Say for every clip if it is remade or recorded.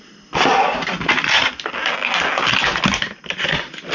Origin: recorded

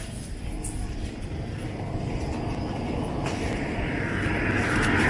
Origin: recorded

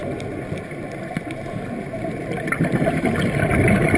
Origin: recorded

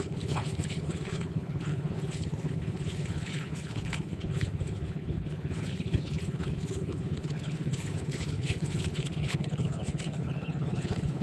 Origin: remade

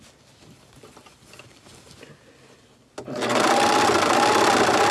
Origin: recorded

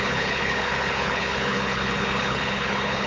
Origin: remade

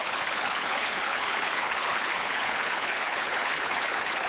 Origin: remade